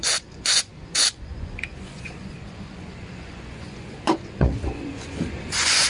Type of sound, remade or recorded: remade